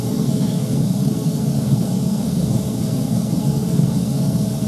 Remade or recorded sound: remade